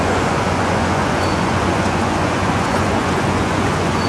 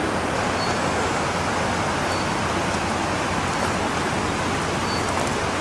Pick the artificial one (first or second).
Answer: first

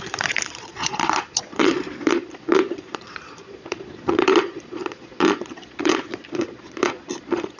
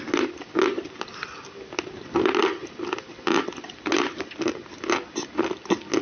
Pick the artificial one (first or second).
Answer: first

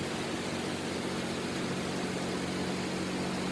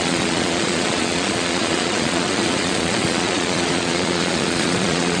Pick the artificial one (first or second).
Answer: second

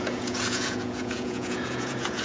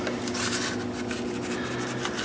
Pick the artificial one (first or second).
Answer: first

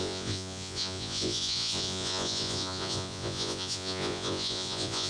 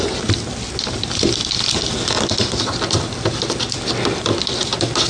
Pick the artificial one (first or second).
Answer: first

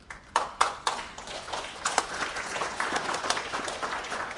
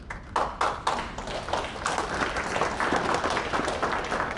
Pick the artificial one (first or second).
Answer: first